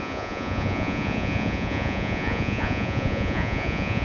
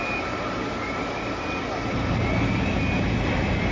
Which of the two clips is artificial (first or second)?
first